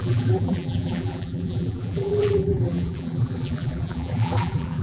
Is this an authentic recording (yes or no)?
no